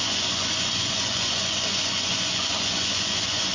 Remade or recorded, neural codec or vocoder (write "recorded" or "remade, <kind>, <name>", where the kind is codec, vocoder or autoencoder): remade, vocoder, Vocos